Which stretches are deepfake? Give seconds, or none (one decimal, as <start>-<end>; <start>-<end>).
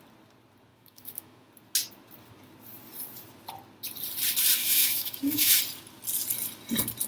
0.7-1.5; 4.6-5.6